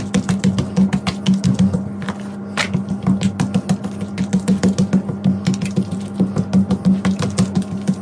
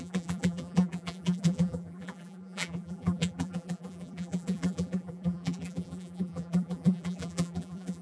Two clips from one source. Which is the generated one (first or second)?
second